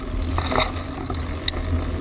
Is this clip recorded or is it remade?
recorded